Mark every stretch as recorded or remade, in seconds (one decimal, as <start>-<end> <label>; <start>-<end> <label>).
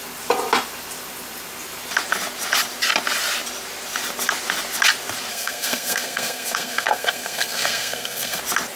0.0-5.3 recorded; 5.3-8.4 remade; 8.4-8.8 recorded